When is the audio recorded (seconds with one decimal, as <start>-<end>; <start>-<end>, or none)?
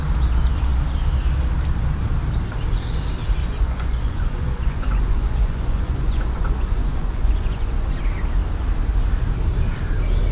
0.0-3.4; 8.0-10.3